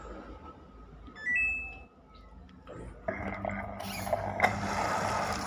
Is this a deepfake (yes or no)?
no